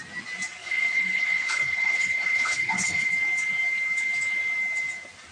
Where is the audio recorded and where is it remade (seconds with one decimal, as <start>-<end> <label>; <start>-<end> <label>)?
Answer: 0.0-0.6 recorded; 0.6-3.1 remade; 3.1-5.3 recorded